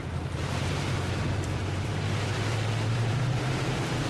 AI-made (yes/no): yes